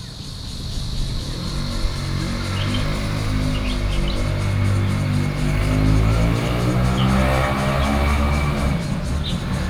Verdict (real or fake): real